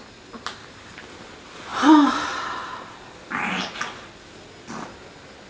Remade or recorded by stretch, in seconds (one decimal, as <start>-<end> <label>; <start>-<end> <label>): 0.0-5.5 recorded